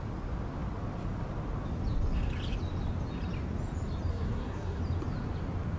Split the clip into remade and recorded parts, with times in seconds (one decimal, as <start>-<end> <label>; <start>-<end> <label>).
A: 0.0-4.1 recorded; 4.1-4.8 remade; 4.8-5.8 recorded